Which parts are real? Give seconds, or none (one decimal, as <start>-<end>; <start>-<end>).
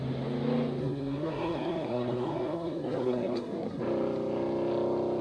0.0-0.8; 3.8-5.2